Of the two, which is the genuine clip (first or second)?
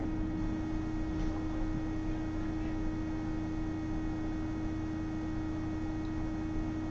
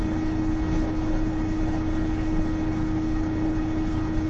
first